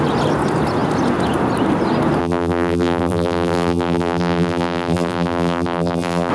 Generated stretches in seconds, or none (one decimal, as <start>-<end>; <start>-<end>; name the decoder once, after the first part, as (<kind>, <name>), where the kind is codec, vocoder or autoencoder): 2.2-6.3 (vocoder, BigVGAN v2)